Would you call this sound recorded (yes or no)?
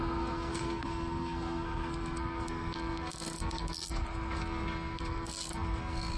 no